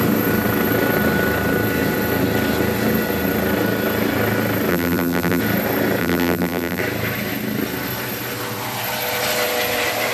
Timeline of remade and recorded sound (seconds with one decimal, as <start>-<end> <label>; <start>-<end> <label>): 0.0-4.7 recorded; 4.7-5.4 remade; 5.4-6.0 recorded; 6.0-6.8 remade; 6.8-10.1 recorded